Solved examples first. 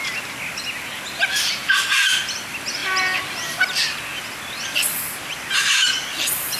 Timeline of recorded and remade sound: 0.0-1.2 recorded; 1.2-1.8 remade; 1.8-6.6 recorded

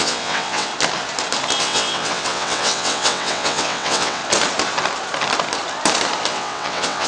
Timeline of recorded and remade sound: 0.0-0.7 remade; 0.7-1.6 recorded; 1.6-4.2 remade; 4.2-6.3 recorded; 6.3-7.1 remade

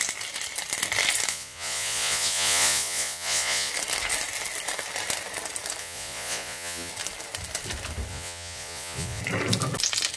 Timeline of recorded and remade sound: 0.0-1.3 recorded; 1.3-3.7 remade; 3.7-5.8 recorded; 5.8-6.9 remade; 6.9-8.1 recorded; 8.1-9.2 remade; 9.2-10.2 recorded

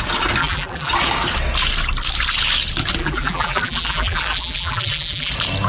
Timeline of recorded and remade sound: 0.0-0.4 recorded; 0.4-0.9 remade; 0.9-3.0 recorded; 3.0-5.3 remade; 5.3-5.7 recorded

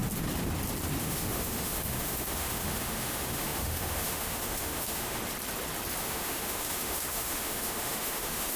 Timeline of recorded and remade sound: 0.0-1.0 recorded; 1.0-5.2 remade; 5.2-6.0 recorded; 6.0-8.6 remade

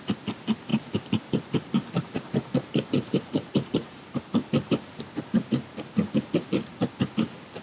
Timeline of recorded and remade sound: 0.0-0.7 recorded; 0.7-5.0 remade; 5.0-7.6 recorded

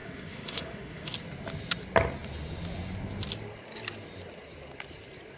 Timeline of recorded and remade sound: 0.0-1.1 remade; 1.1-5.4 recorded

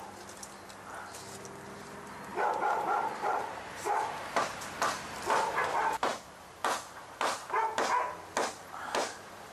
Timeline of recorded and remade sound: 0.0-2.3 recorded; 2.3-4.1 remade; 4.1-9.5 recorded